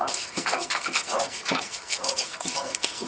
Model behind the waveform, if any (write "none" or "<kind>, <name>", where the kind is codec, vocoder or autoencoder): codec, SNAC